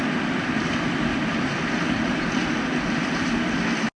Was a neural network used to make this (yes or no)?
no